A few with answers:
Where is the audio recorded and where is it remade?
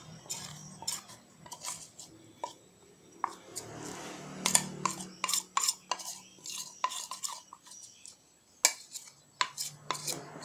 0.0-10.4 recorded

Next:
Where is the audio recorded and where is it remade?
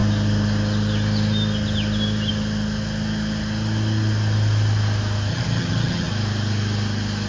0.0-5.3 recorded; 5.3-6.1 remade; 6.1-7.3 recorded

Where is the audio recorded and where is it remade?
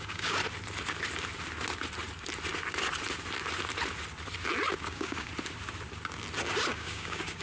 0.0-0.4 remade; 0.4-4.8 recorded; 4.8-5.3 remade; 5.3-6.7 recorded; 6.7-7.4 remade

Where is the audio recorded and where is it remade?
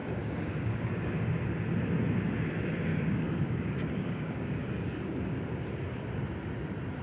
0.0-1.1 remade; 1.1-2.9 recorded; 2.9-5.4 remade; 5.4-7.0 recorded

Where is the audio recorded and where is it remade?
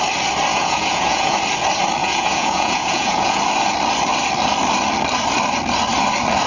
0.0-0.5 recorded; 0.5-1.4 remade; 1.4-2.0 recorded; 2.0-3.4 remade; 3.4-6.5 recorded